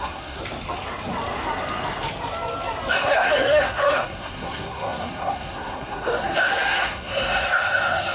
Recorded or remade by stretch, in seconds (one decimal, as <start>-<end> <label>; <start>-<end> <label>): 0.0-0.4 remade; 0.4-2.9 recorded; 2.9-8.1 remade